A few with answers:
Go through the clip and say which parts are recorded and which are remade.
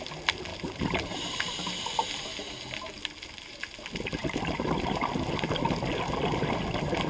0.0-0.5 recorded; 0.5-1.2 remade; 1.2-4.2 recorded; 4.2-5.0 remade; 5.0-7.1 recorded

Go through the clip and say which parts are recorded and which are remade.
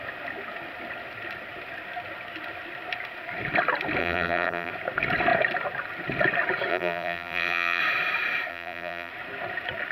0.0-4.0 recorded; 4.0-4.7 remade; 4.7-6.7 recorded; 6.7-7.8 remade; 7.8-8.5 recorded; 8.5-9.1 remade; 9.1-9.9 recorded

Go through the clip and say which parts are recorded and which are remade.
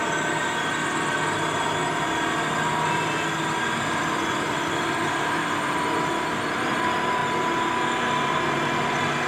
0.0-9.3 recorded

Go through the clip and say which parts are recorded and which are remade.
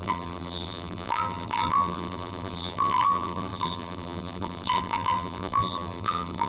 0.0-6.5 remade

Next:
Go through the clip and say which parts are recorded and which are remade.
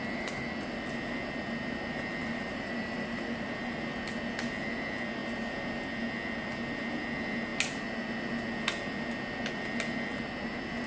0.0-2.2 recorded; 2.2-3.8 remade; 3.8-10.9 recorded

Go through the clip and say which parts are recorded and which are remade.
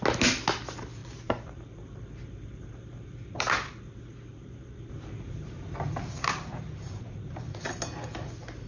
0.0-1.0 recorded; 1.0-3.8 remade; 3.8-4.3 recorded; 4.3-7.4 remade; 7.4-8.7 recorded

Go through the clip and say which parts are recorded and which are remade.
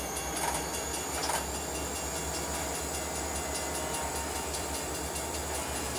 0.0-4.1 recorded; 4.1-5.4 remade; 5.4-6.0 recorded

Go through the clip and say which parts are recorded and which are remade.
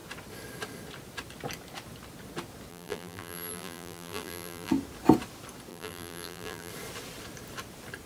0.0-2.7 recorded; 2.7-4.7 remade; 4.7-5.7 recorded; 5.7-6.7 remade; 6.7-8.1 recorded